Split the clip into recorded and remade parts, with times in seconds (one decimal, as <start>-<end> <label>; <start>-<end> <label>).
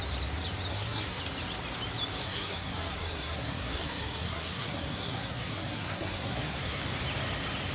0.0-0.7 recorded; 0.7-1.2 remade; 1.2-2.2 recorded; 2.2-6.8 remade; 6.8-7.7 recorded